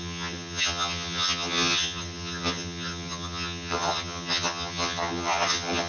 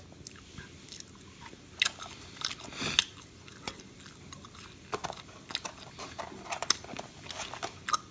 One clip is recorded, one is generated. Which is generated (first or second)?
first